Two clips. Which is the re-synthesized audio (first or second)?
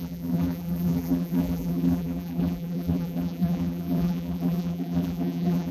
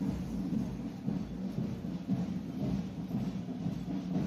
first